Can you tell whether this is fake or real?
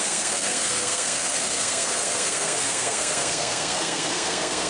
fake